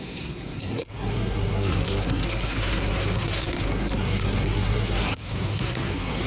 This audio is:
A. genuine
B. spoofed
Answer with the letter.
B